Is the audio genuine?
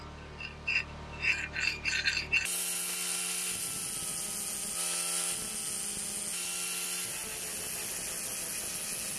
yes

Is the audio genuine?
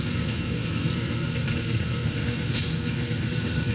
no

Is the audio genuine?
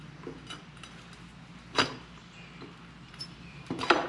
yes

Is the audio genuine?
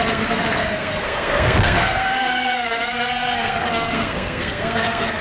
no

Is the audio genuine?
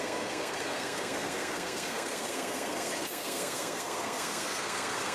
no